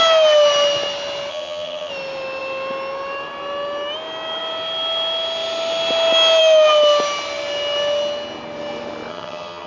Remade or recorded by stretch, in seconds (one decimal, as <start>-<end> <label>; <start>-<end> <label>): 0.0-1.3 recorded; 1.3-1.9 remade; 1.9-9.1 recorded; 9.1-9.7 remade